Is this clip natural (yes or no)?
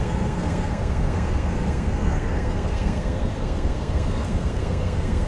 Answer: no